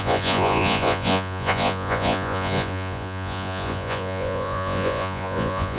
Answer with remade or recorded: remade